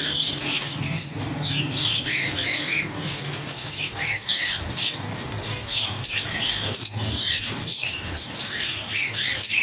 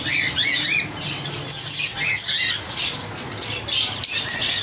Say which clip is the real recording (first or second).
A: second